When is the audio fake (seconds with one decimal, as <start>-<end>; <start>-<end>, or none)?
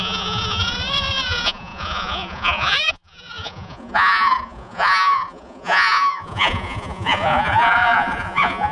0.0-8.7